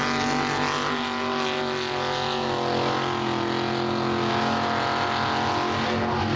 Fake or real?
real